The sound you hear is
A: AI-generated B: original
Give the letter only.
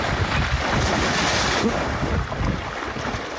B